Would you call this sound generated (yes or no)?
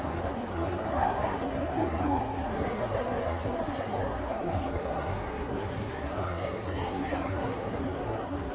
yes